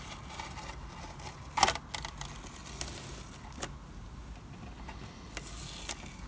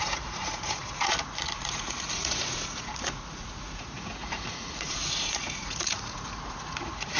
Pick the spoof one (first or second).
second